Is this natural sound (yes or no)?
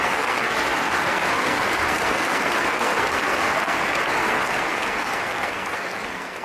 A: no